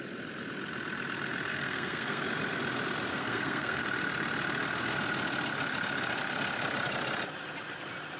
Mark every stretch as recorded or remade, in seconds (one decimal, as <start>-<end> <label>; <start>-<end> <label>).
0.0-1.5 recorded; 1.5-2.2 remade; 2.2-3.1 recorded; 3.1-3.8 remade; 3.8-8.2 recorded